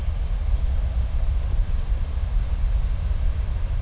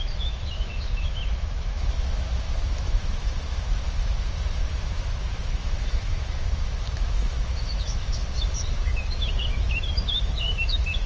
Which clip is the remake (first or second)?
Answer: second